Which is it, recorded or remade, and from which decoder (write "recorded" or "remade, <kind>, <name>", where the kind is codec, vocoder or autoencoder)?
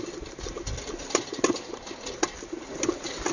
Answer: recorded